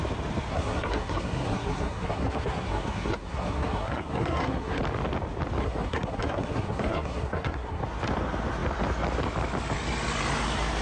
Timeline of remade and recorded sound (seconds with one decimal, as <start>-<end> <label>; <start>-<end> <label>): 0.0-0.5 recorded; 0.5-4.8 remade; 4.8-5.6 recorded; 5.6-7.8 remade; 7.8-10.8 recorded